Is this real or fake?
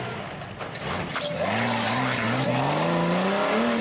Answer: real